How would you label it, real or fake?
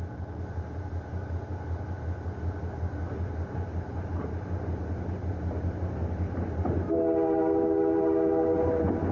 real